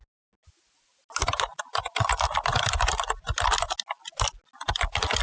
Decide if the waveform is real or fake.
real